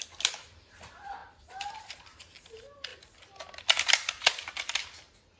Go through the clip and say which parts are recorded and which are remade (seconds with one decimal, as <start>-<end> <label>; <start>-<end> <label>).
0.0-5.4 recorded